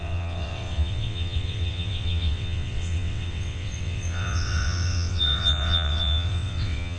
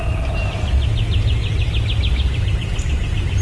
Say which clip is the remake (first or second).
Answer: first